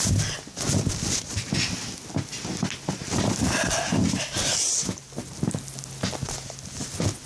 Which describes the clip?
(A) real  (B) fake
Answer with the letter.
A